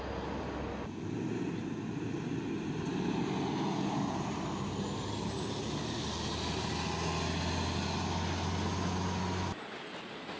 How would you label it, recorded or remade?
recorded